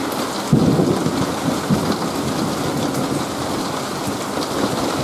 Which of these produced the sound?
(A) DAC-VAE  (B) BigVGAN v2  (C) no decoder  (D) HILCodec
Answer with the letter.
C